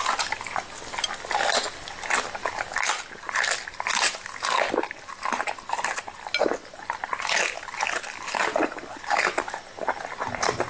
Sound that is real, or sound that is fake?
real